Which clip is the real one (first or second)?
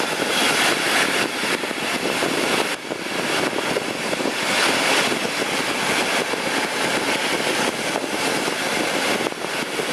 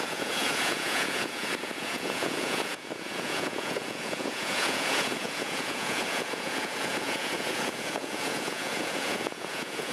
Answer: first